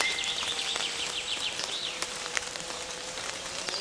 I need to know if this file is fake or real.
fake